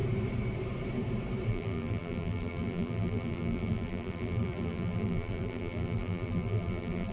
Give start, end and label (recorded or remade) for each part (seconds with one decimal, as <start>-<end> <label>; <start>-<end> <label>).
0.0-1.5 recorded; 1.5-7.1 remade